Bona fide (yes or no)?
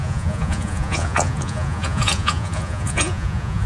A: no